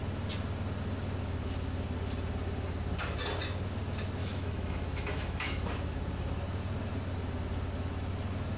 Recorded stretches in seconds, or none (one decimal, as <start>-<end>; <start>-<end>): 0.0-4.2; 5.7-8.6